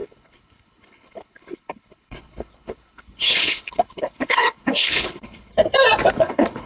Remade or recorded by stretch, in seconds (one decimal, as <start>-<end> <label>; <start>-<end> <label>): 0.0-5.5 remade; 5.5-6.1 recorded; 6.1-6.7 remade